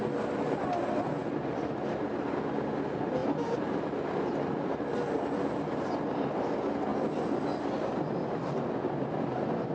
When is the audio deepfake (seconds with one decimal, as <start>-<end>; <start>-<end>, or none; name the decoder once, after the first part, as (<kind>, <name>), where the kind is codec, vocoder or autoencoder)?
none